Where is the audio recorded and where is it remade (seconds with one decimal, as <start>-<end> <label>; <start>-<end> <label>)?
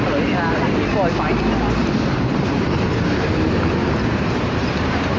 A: 0.0-1.8 recorded; 1.8-5.2 remade